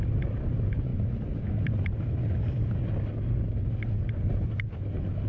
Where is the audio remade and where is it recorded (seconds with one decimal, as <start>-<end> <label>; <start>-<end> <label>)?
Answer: 0.0-5.3 recorded